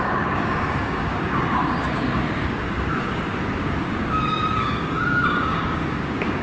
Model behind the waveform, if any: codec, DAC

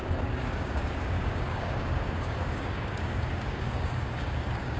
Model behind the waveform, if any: codec, DAC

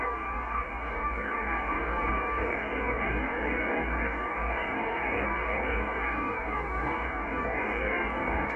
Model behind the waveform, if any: codec, DAC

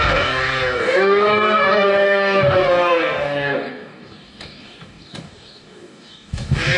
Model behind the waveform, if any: codec, DAC